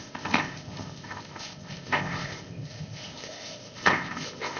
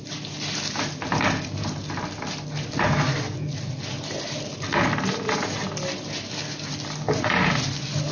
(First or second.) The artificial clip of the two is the first